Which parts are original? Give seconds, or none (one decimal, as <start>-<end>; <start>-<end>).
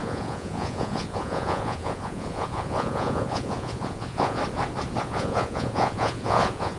4.4-5.0